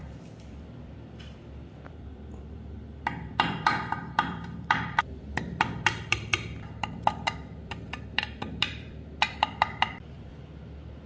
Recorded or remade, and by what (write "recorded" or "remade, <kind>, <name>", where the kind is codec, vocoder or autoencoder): remade, vocoder, BigVGAN v2